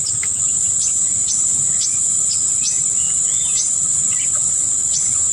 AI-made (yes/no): no